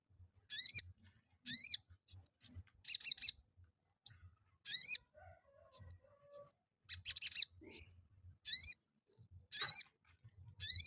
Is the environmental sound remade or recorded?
recorded